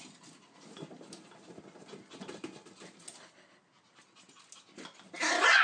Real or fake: real